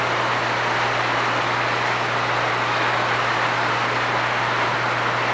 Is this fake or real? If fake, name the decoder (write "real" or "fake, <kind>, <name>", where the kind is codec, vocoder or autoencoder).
real